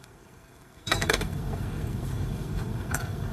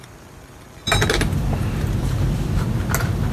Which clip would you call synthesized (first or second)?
first